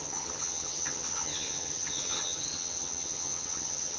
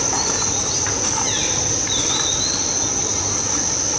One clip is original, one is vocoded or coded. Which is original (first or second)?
second